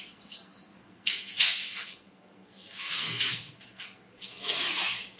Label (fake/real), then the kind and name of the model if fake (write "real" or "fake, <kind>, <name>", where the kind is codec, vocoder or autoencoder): fake, codec, SNAC